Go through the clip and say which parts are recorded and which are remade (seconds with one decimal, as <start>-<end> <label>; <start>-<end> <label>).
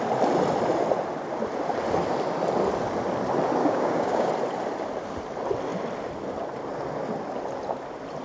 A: 0.0-3.6 recorded; 3.6-4.3 remade; 4.3-8.2 recorded